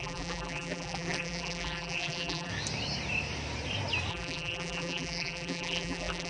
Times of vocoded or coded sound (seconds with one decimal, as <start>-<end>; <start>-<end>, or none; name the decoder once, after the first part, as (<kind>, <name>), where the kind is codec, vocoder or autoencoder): 0.0-2.5 (vocoder, BigVGAN v2); 4.1-6.3